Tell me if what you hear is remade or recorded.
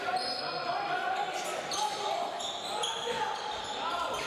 recorded